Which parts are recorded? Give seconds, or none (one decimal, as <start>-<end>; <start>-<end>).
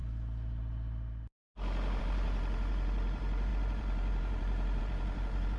0.0-2.0